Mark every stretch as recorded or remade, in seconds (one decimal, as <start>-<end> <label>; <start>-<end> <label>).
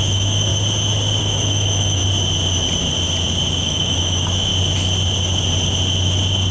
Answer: 0.0-0.5 remade; 0.5-1.2 recorded; 1.2-2.0 remade; 2.0-3.5 recorded; 3.5-4.5 remade; 4.5-6.5 recorded